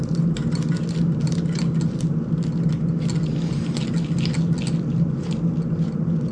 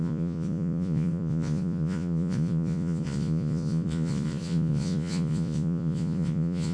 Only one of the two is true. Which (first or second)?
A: first